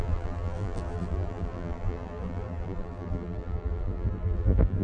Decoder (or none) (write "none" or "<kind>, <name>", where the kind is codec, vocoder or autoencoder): vocoder, BigVGAN v2